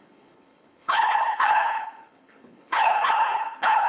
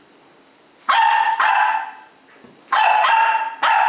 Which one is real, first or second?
second